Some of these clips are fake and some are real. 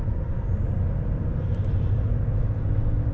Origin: real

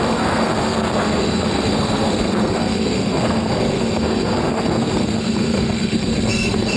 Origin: fake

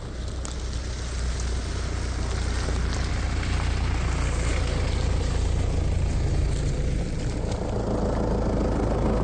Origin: real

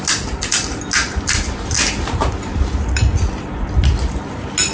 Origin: real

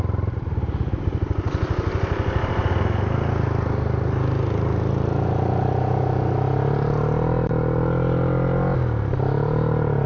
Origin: real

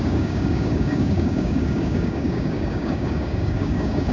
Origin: fake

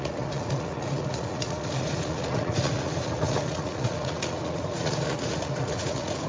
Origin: fake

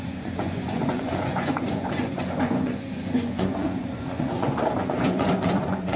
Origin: fake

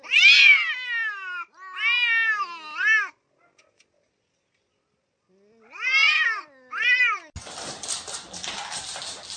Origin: real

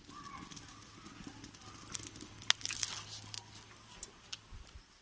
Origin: real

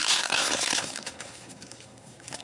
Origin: fake